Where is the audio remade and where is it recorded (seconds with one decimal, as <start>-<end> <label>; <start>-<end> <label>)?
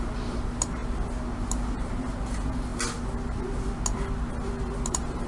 0.0-5.3 recorded